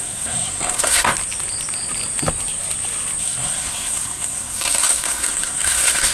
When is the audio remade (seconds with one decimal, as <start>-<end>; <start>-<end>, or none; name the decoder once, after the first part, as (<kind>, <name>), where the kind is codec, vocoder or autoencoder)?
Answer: 0.0-1.1 (codec, SNAC); 3.2-6.1